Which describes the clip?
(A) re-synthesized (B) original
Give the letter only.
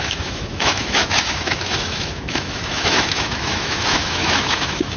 A